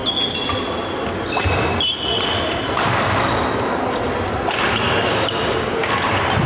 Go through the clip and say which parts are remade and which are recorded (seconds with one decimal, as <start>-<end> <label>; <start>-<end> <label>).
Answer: 0.0-5.1 recorded; 5.1-6.1 remade; 6.1-6.5 recorded